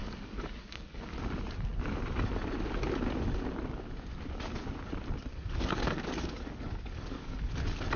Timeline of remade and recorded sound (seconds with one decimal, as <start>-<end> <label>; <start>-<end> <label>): 0.0-1.1 remade; 1.1-5.3 recorded; 5.3-7.5 remade; 7.5-8.0 recorded

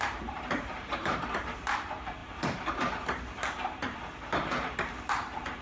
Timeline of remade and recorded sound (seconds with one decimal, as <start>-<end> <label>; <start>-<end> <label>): 0.0-5.6 remade